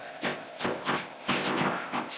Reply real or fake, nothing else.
fake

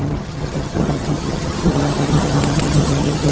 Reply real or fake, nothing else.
fake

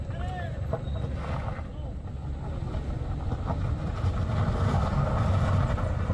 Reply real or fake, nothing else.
real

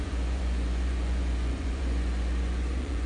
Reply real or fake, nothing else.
fake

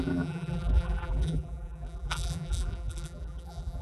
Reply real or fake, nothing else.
fake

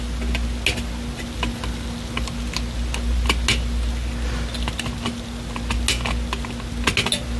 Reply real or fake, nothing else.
real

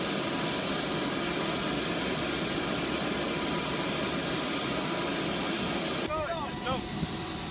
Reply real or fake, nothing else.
real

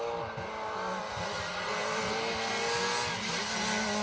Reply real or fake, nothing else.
real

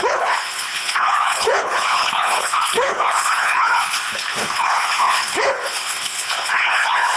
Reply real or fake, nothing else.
fake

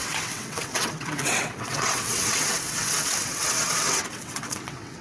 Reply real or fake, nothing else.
fake